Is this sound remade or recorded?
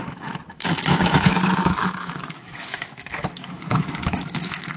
remade